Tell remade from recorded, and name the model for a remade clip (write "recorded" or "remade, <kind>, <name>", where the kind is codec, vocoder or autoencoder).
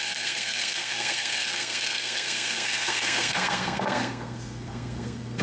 remade, codec, SNAC